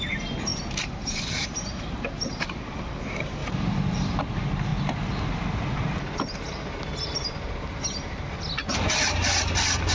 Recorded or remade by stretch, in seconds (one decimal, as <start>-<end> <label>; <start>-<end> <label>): 0.0-0.5 recorded; 0.5-2.6 remade; 2.6-3.4 recorded; 3.4-4.2 remade; 4.2-9.9 recorded

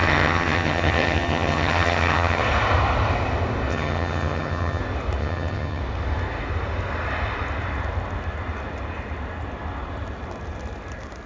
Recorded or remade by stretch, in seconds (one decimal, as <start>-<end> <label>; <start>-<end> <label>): 0.0-2.4 remade; 2.4-3.7 recorded; 3.7-4.8 remade; 4.8-5.2 recorded; 5.2-5.8 remade; 5.8-11.3 recorded

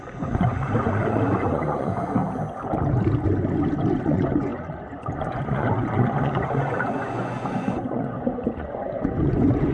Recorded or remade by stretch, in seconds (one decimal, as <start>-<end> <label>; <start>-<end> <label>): 0.0-2.2 remade; 2.2-4.0 recorded; 4.0-9.7 remade

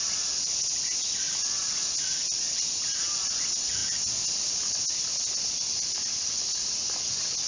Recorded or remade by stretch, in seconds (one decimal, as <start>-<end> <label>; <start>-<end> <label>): 0.0-7.5 recorded

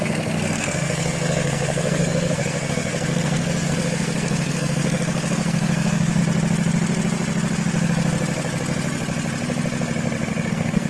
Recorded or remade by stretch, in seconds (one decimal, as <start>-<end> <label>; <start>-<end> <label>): 0.0-6.2 remade; 6.2-10.5 recorded; 10.5-10.9 remade

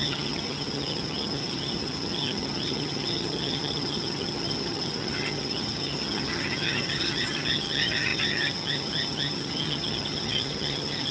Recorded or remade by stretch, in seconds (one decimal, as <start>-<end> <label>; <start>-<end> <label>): 0.0-11.1 remade